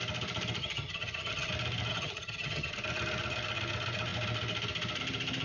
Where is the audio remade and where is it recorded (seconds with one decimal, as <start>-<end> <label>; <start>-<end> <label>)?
0.0-0.6 recorded; 0.6-1.5 remade; 1.5-1.9 recorded; 1.9-2.7 remade; 2.7-5.4 recorded